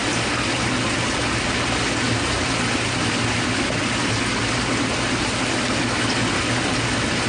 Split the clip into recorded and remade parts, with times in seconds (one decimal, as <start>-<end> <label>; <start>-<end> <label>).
0.0-7.3 recorded